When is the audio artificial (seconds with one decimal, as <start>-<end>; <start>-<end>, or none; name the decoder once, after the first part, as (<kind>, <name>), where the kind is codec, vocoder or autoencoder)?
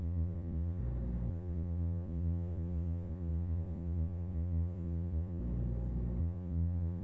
0.0-0.8 (vocoder, Vocos); 1.3-5.4; 6.2-7.0